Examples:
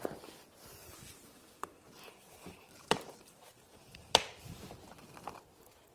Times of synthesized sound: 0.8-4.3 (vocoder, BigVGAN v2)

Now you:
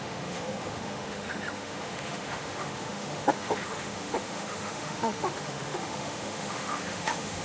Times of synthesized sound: 0.0-7.4 (autoencoder, DAC-VAE)

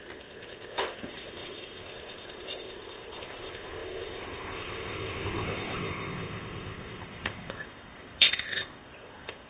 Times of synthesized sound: 0.0-9.5 (codec, ZipCodec)

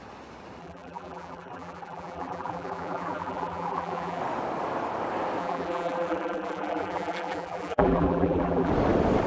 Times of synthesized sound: 0.6-4.2 (vocoder, BigVGAN v2); 5.4-8.7

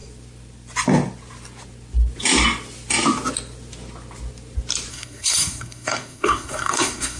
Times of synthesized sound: 4.9-7.2 (codec, SNAC)

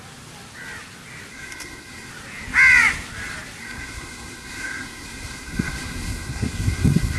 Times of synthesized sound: 1.3-2.1 (codec, SNAC); 3.6-7.2

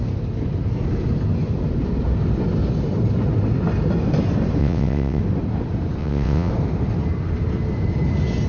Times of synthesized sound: 4.6-5.2 (vocoder, WaveNeXt); 6.0-6.5

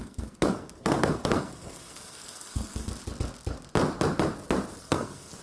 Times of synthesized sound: 0.0-2.9 (codec, SNAC); 4.8-5.4